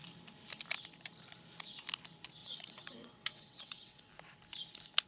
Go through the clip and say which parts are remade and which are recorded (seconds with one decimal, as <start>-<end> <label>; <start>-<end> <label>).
0.0-2.4 recorded; 2.4-4.1 remade; 4.1-5.1 recorded